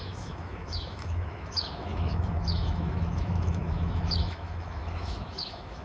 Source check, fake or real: fake